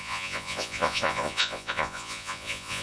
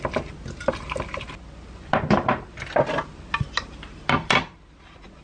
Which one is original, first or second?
second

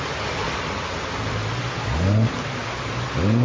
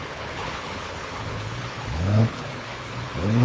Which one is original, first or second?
first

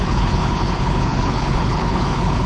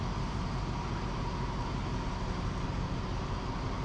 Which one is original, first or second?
second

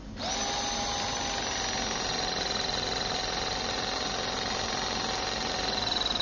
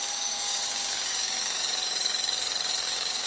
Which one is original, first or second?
first